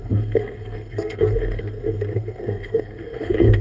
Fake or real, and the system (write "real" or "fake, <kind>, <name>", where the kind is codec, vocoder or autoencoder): fake, codec, SNAC